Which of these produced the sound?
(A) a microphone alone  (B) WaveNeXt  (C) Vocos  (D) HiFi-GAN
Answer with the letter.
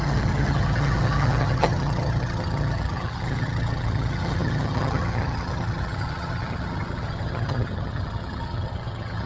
D